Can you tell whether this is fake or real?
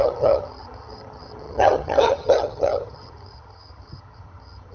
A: fake